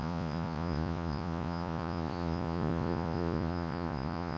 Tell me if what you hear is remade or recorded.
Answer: remade